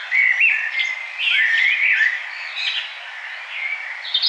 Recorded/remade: recorded